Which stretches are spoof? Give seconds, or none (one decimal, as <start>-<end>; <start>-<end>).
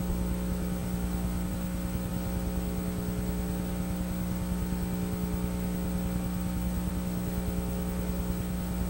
none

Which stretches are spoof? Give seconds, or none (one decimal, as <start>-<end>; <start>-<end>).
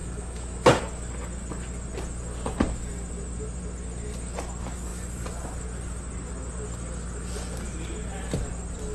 0.0-0.8